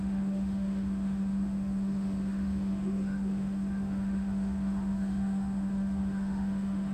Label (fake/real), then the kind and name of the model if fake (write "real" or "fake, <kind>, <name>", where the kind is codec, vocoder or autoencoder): fake, autoencoder, DAC-VAE